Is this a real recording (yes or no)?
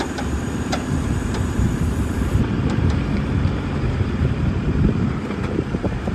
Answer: no